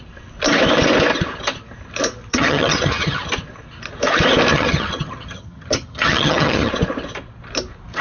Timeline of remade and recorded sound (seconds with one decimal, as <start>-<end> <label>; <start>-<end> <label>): 0.0-2.3 recorded; 2.3-3.3 remade; 3.3-4.5 recorded; 4.5-6.7 remade; 6.7-8.0 recorded